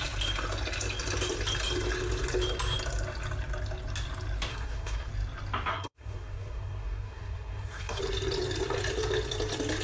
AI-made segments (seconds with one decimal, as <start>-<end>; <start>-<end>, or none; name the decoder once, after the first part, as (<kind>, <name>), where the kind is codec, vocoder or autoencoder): 4.5-5.1 (codec, SNAC); 5.7-8.0